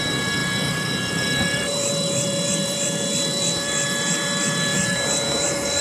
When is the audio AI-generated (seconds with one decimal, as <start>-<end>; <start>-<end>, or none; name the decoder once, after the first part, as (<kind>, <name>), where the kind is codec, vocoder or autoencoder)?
0.0-5.8 (vocoder, BigVGAN v2)